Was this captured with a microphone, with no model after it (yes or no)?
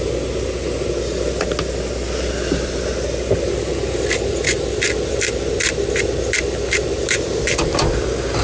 yes